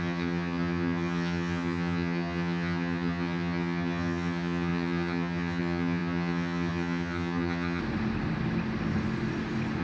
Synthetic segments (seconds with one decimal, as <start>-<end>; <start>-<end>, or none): 0.0-7.8